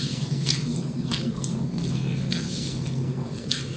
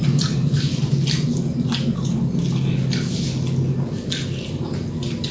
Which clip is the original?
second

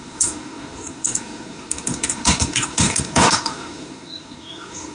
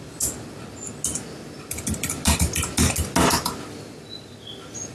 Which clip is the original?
second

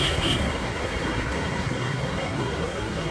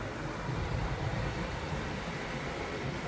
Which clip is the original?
second